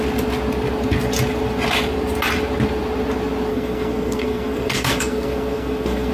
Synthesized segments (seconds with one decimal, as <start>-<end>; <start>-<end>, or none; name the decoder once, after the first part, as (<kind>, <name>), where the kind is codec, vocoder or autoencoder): 3.5-6.1 (codec, SNAC)

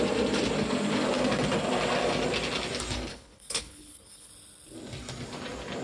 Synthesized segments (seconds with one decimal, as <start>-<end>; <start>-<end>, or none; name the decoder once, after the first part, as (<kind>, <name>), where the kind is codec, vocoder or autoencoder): 3.1-4.3 (codec, HILCodec)

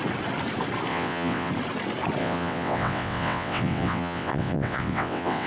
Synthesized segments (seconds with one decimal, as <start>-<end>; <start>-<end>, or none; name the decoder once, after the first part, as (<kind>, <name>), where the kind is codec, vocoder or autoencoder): 0.9-1.5 (vocoder, WaveNeXt); 2.2-5.5

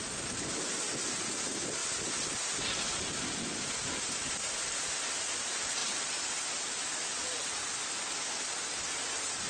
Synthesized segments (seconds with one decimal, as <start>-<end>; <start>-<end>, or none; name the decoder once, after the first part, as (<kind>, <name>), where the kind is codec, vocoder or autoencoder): 1.8-2.7 (vocoder, BigVGAN v2); 5.8-7.2